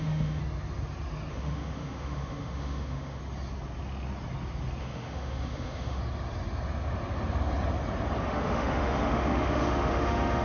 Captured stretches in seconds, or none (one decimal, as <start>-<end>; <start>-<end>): 0.4-1.3; 3.2-4.8; 6.0-8.3

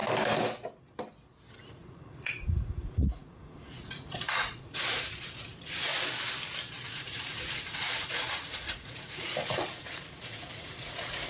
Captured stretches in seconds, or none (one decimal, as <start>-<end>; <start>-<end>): 0.0-1.7; 5.9-6.9

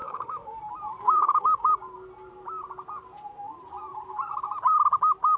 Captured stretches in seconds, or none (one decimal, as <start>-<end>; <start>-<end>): 0.6-1.0; 1.7-5.4

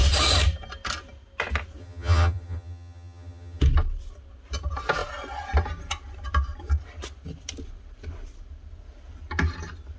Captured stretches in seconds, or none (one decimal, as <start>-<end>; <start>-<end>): 0.0-1.8; 3.6-10.0

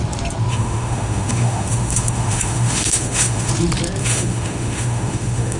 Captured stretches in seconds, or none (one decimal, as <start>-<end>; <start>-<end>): 0.0-0.5; 3.5-4.0

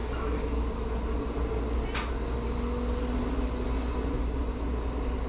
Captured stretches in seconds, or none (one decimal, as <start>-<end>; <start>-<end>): 0.0-5.3

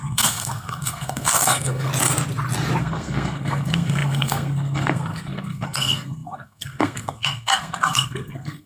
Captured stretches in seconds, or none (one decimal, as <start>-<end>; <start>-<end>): 1.9-2.8